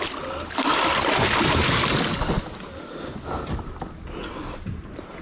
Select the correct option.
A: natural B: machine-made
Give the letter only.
A